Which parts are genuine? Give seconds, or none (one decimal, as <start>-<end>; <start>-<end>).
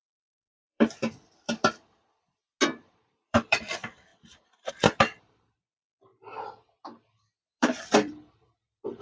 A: 2.4-3.1; 4.1-4.7; 6.1-7.6